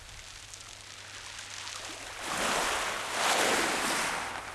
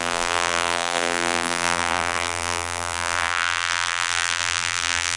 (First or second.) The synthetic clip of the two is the second